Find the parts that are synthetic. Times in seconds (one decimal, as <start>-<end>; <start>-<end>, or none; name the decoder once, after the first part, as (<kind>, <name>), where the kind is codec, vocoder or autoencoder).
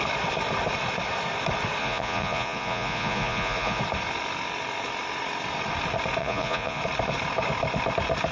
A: 1.8-3.8 (vocoder, Vocos); 6.2-6.8